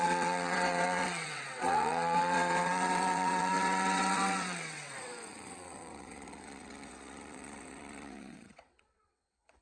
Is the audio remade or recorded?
remade